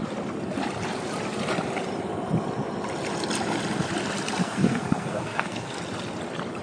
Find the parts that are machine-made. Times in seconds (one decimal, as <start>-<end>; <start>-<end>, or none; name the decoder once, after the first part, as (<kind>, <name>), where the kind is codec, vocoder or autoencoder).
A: 4.4-5.8 (codec, SNAC)